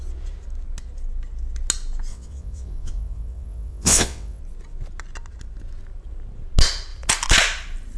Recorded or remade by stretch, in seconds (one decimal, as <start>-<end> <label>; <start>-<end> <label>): 0.0-2.1 recorded; 2.1-4.4 remade; 4.4-8.0 recorded